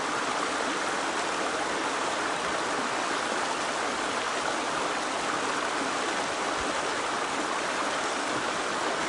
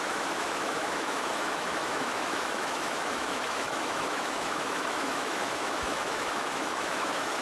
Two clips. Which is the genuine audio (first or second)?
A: first